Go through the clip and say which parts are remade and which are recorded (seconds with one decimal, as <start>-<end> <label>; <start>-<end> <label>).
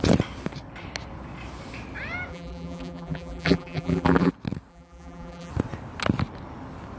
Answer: 0.0-2.3 recorded; 2.3-4.3 remade; 4.3-4.7 recorded; 4.7-5.5 remade; 5.5-7.0 recorded